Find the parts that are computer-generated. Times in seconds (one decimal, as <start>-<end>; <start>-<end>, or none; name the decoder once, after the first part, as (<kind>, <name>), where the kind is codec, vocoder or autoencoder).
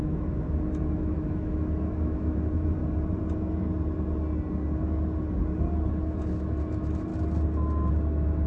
0.0-2.8 (autoencoder, DAC-VAE); 5.9-7.1; 7.9-8.5